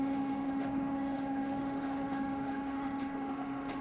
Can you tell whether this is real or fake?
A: fake